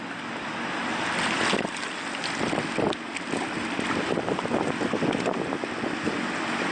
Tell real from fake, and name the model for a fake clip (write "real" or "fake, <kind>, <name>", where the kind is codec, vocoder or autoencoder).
real